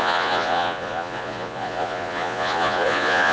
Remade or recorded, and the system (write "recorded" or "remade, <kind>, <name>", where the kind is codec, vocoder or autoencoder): remade, vocoder, Vocos